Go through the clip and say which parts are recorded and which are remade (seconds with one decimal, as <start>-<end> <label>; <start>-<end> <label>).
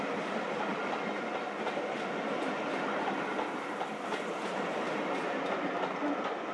0.0-6.5 recorded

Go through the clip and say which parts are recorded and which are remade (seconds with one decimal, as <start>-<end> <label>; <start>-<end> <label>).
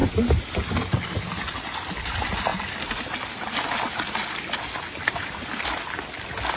0.0-6.6 recorded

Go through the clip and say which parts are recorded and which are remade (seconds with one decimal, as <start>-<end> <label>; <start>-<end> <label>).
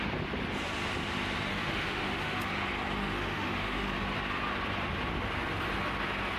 0.0-1.5 recorded; 1.5-2.5 remade; 2.5-3.0 recorded; 3.0-3.9 remade; 3.9-6.4 recorded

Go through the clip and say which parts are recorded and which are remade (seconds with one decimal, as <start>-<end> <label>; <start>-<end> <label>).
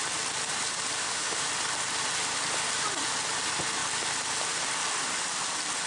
0.0-1.0 recorded; 1.0-1.5 remade; 1.5-5.9 recorded